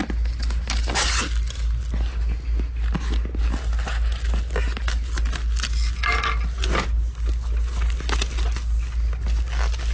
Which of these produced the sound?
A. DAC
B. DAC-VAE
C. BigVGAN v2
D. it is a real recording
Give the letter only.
D